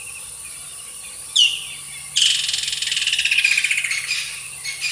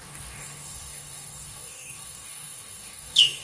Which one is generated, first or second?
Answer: second